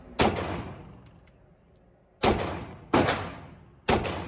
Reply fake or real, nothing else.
real